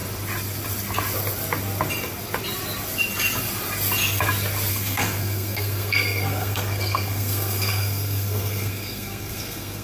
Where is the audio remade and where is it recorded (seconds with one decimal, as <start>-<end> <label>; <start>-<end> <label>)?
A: 0.0-4.7 recorded; 4.7-9.8 remade